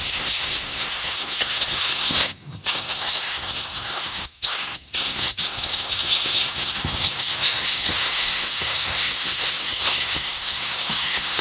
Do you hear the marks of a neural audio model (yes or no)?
yes